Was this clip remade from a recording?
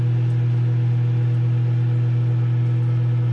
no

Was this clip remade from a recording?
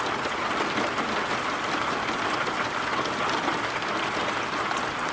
no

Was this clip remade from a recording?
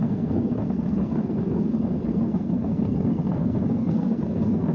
yes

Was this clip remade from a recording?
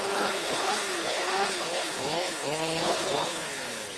yes